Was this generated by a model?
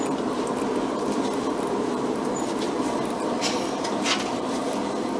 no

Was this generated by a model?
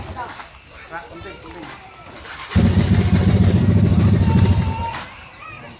no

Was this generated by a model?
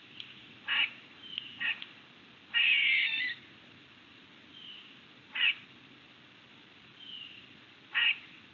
no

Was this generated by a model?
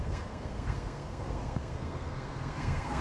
yes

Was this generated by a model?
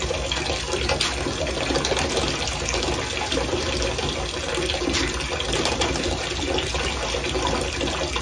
no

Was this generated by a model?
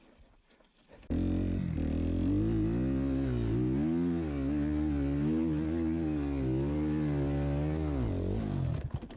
no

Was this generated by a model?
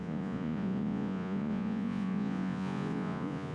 yes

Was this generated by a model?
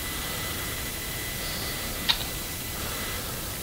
no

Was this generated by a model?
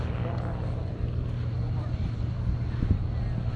no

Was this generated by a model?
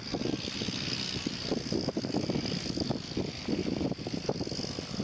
no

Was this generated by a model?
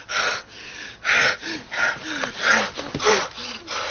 no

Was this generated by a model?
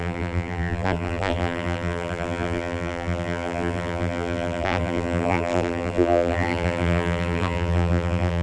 yes